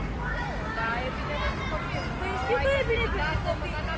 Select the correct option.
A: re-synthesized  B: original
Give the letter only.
B